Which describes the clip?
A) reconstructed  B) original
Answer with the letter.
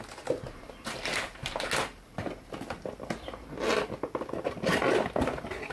B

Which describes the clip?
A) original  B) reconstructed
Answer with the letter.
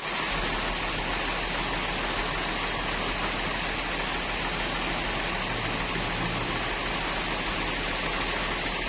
A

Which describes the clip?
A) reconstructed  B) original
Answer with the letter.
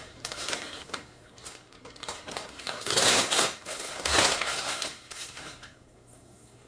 A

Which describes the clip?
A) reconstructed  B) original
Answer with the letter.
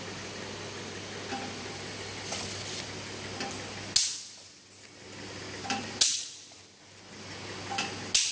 B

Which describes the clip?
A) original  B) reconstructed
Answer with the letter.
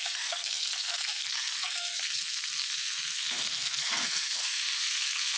B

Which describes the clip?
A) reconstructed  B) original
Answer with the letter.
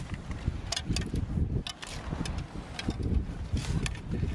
B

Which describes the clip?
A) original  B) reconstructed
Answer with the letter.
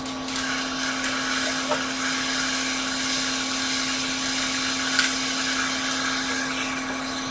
A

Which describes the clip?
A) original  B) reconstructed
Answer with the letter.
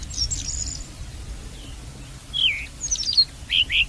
A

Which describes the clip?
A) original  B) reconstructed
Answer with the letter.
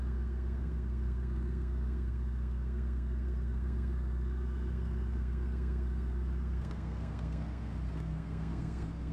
B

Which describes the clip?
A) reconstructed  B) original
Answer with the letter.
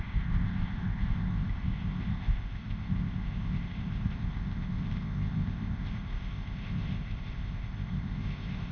A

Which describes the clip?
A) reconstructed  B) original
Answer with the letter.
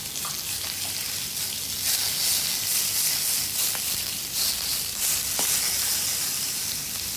B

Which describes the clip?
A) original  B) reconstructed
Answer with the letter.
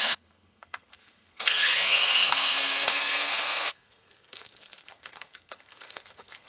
B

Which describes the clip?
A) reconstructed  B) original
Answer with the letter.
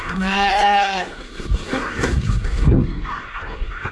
A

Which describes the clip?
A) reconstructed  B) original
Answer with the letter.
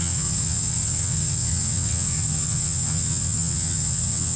A